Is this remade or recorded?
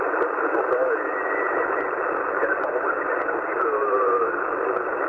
recorded